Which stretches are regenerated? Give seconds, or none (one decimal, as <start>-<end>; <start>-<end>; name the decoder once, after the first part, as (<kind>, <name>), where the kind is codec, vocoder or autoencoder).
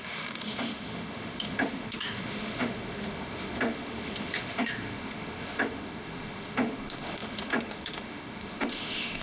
0.0-9.2 (autoencoder, DAC-VAE)